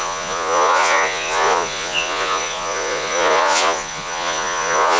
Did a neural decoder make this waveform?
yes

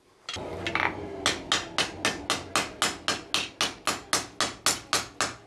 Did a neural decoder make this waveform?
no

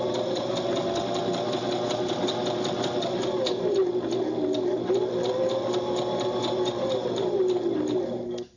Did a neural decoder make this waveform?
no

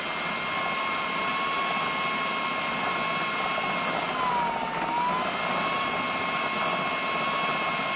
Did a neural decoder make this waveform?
no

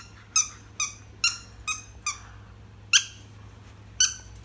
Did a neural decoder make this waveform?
no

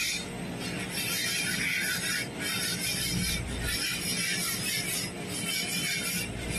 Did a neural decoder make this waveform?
no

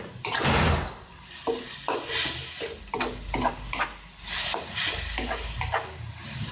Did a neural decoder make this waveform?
no